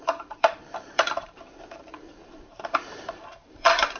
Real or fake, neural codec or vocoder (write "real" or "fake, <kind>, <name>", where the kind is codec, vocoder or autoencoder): fake, vocoder, BigVGAN v2